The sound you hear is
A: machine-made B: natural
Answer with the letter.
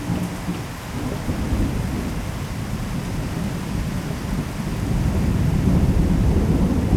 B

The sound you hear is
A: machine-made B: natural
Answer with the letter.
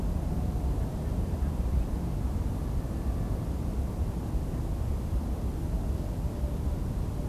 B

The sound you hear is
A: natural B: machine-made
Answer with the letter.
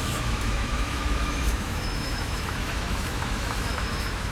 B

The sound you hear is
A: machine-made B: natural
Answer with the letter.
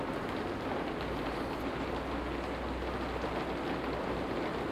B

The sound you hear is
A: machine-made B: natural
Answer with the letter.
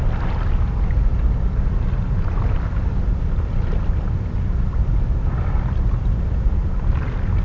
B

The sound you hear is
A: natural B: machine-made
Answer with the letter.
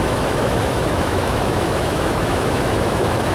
B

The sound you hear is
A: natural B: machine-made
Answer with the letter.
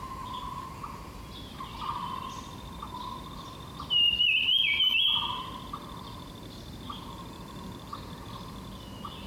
A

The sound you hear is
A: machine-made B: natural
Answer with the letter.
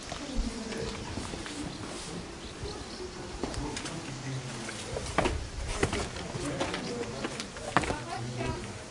B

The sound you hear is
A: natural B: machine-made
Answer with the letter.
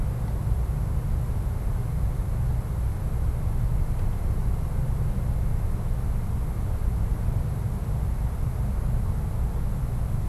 A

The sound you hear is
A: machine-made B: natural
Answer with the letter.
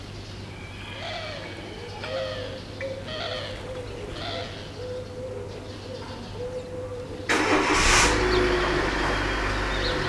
B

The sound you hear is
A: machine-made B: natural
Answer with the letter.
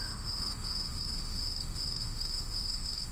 A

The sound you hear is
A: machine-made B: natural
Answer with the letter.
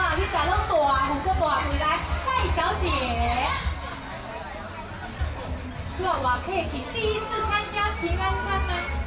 B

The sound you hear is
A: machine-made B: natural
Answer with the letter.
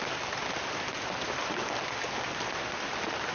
B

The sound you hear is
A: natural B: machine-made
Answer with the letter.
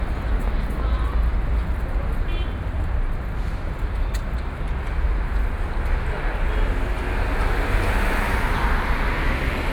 A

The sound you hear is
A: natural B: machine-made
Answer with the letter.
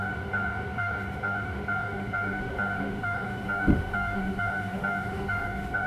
B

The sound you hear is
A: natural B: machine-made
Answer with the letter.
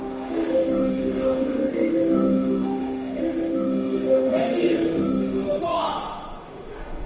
B